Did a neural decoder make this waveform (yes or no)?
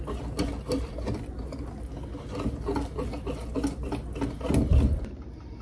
no